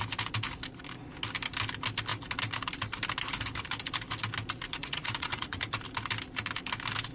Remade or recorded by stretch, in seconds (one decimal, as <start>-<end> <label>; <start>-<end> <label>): 0.0-4.8 recorded; 4.8-5.6 remade; 5.6-7.1 recorded